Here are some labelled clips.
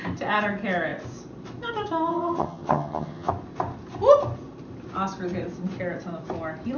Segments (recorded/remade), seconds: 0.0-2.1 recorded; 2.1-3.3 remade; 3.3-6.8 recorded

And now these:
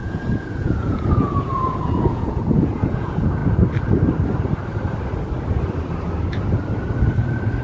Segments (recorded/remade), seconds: 0.0-3.4 remade; 3.4-7.6 recorded

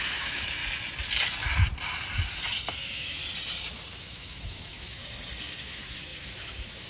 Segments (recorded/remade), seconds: 0.0-0.6 remade; 0.6-2.7 recorded; 2.7-3.2 remade; 3.2-3.9 recorded; 3.9-5.0 remade; 5.0-5.6 recorded; 5.6-6.9 remade

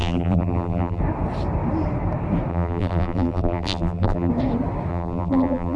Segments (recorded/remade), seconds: 0.0-1.0 remade; 1.0-2.5 recorded; 2.5-4.3 remade; 4.3-4.9 recorded; 4.9-5.8 remade